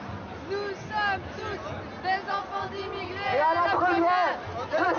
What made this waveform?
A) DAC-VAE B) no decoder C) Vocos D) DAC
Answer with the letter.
B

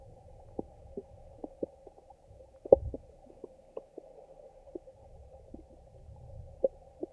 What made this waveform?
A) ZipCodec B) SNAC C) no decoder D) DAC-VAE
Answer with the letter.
C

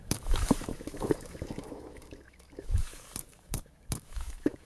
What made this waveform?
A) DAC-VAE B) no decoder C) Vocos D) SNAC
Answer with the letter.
A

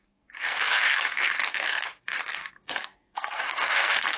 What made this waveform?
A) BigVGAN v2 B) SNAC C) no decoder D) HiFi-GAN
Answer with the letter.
B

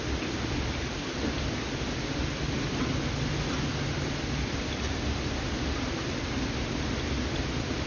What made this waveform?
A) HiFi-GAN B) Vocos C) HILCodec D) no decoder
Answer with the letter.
D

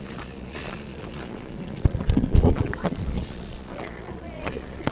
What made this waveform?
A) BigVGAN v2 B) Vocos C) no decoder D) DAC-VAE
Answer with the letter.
B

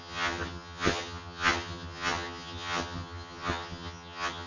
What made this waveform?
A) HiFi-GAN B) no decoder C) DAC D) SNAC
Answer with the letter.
A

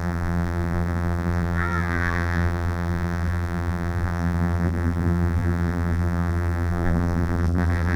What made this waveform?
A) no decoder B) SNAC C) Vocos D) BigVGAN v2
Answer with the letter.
D